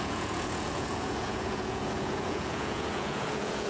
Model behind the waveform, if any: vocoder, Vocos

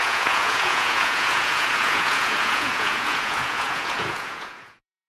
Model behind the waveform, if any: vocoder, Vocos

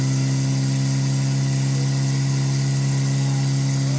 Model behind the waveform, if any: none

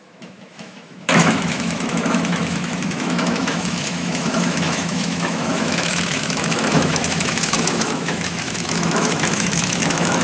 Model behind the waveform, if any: autoencoder, DAC-VAE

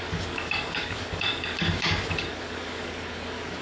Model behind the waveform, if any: codec, DAC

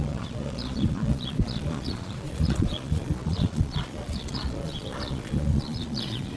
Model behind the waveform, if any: vocoder, Vocos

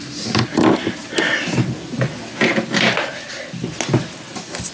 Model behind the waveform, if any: none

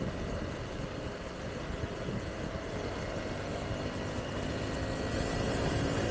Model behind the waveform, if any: none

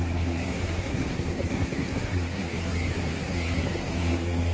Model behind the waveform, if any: codec, SNAC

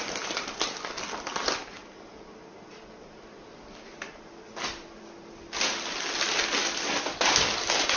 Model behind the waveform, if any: none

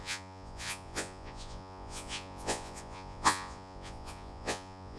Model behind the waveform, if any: vocoder, Vocos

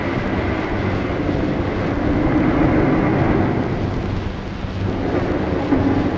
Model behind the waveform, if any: none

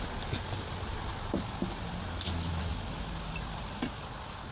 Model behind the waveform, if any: none